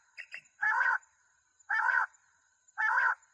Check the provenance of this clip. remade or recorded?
remade